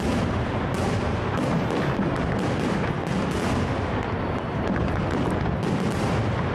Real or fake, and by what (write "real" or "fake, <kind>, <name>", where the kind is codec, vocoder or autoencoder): real